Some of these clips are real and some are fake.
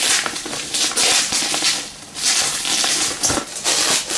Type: real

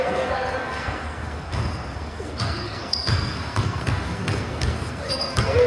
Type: fake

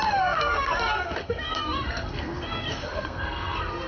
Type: fake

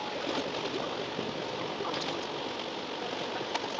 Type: real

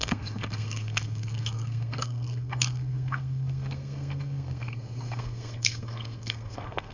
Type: fake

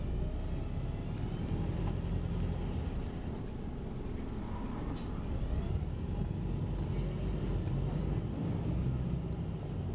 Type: real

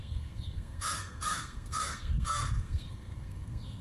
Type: fake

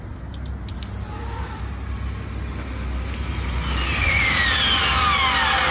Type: real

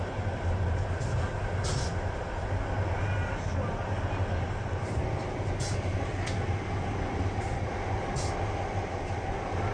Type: real